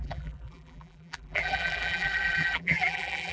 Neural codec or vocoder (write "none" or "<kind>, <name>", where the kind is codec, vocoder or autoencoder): vocoder, BigVGAN v2